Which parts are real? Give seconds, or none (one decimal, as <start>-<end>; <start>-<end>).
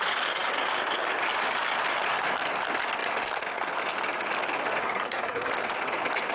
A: 0.0-4.8; 5.5-6.3